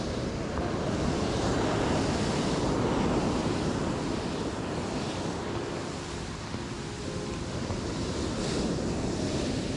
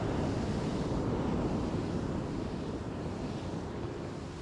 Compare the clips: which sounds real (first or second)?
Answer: first